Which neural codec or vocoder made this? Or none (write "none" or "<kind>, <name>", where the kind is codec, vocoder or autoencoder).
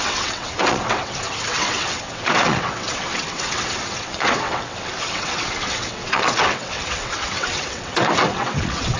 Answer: vocoder, WaveNeXt